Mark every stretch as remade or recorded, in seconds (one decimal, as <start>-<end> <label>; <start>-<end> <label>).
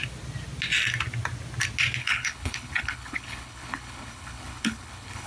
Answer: 0.0-2.0 recorded; 2.0-5.3 remade